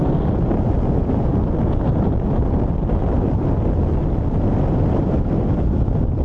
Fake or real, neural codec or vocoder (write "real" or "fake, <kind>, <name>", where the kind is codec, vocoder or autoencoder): real